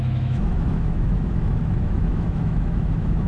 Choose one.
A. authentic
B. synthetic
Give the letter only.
B